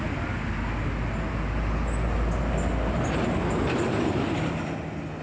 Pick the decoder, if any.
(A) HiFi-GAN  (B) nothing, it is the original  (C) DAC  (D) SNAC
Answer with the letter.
B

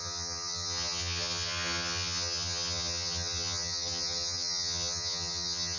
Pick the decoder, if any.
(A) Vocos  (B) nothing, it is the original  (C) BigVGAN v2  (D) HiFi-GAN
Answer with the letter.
D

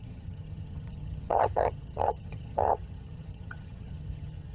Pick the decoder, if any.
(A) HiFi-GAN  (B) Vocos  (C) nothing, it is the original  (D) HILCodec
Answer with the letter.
A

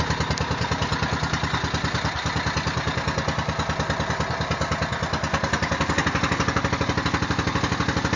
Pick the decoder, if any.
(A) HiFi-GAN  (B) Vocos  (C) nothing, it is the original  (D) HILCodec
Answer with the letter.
C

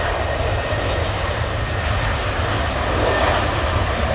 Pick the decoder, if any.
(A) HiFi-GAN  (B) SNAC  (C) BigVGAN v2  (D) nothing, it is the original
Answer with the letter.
D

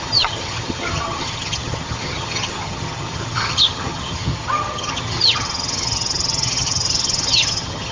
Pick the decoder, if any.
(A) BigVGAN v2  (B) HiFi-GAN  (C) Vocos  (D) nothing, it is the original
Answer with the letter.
B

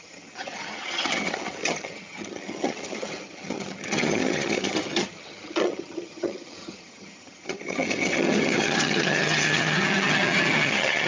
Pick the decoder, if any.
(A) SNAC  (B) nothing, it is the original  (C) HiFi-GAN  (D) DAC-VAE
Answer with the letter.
C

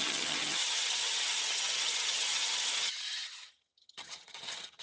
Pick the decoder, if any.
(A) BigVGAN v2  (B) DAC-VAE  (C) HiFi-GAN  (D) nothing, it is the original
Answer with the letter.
C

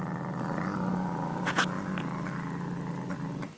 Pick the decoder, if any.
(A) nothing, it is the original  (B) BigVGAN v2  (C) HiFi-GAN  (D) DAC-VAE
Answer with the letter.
A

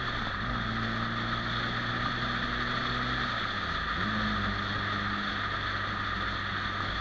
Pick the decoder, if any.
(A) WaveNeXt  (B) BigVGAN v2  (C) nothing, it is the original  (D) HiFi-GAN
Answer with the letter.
C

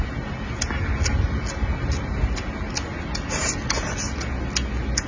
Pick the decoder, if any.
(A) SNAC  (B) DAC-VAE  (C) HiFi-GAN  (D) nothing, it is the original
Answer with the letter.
D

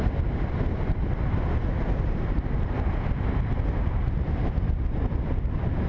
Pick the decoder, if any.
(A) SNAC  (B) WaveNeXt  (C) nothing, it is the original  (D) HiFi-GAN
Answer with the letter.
C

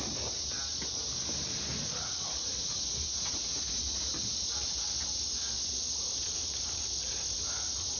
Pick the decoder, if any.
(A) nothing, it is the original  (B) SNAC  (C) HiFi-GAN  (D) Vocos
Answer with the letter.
A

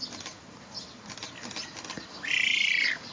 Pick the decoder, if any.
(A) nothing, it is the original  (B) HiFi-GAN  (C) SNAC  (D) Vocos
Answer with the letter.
A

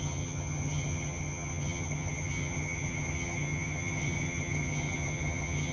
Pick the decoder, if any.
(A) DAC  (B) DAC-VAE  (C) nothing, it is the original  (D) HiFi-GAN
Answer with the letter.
D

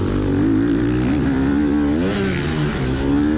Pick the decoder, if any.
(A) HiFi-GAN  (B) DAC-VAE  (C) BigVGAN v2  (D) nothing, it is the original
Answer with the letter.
D